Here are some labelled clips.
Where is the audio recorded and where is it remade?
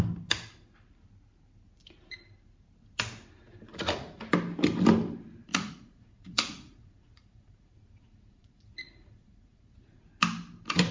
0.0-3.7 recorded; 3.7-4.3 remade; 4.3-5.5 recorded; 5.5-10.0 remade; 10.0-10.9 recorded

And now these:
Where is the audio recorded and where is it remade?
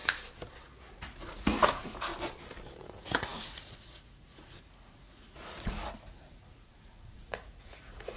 0.0-0.9 recorded; 0.9-2.1 remade; 2.1-2.8 recorded; 2.8-8.2 remade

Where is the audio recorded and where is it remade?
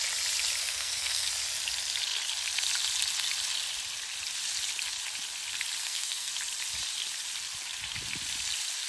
0.0-0.6 recorded; 0.6-1.3 remade; 1.3-5.8 recorded; 5.8-6.3 remade; 6.3-8.9 recorded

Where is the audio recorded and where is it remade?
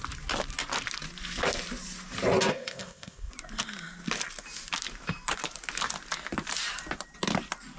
0.0-2.5 recorded; 2.5-3.3 remade; 3.3-7.8 recorded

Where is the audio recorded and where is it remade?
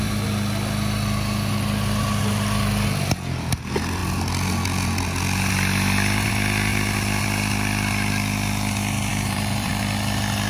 0.0-9.1 recorded; 9.1-9.7 remade; 9.7-10.5 recorded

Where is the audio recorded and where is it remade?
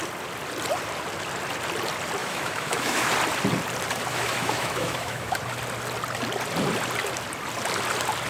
0.0-2.2 recorded; 2.2-3.1 remade; 3.1-4.1 recorded; 4.1-5.4 remade; 5.4-8.3 recorded